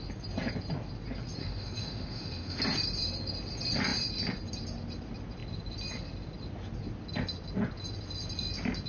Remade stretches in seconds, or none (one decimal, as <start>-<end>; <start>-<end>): 1.4-2.6